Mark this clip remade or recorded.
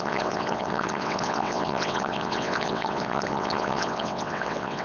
remade